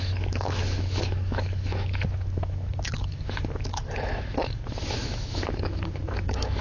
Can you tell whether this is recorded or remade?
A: remade